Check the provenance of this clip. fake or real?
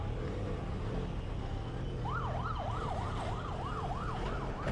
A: real